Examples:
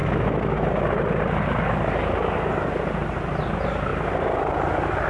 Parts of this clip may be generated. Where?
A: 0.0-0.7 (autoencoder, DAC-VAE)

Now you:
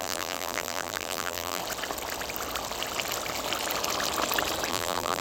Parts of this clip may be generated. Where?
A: 0.0-1.6 (vocoder, BigVGAN v2); 4.7-5.2